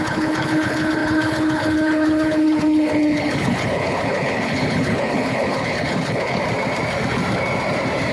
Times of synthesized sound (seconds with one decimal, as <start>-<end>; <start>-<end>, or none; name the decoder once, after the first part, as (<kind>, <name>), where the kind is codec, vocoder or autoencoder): 0.0-6.4 (codec, HILCodec)